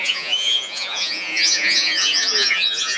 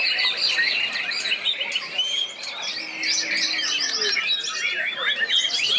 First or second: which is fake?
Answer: first